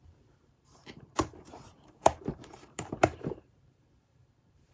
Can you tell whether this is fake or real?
fake